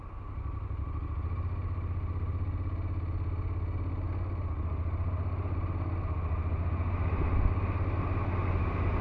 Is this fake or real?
real